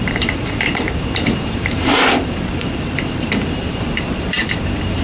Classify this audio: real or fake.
fake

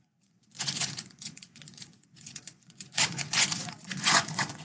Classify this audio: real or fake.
fake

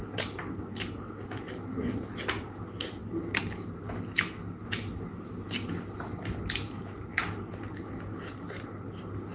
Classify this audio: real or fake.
real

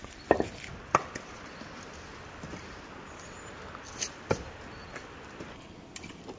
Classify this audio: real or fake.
real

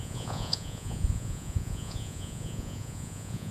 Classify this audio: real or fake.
fake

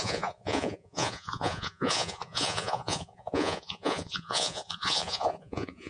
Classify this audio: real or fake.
fake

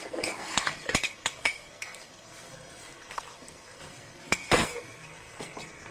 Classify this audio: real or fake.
fake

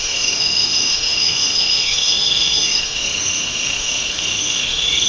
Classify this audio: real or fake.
fake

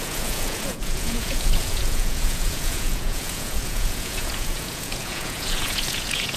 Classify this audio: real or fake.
fake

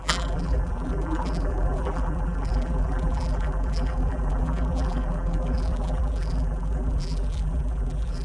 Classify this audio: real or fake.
fake